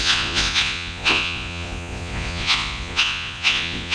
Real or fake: fake